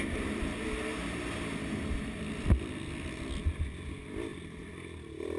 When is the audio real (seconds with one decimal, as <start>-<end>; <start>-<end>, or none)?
0.0-5.4